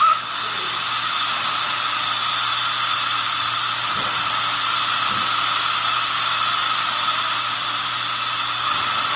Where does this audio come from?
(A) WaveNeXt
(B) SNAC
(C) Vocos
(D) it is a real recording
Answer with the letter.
D